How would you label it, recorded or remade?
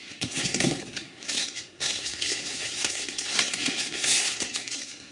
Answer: remade